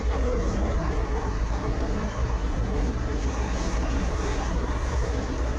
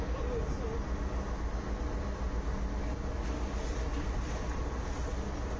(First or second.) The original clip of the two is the second